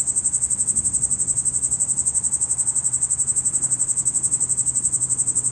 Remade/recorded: recorded